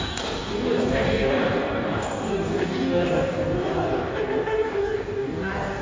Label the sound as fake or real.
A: fake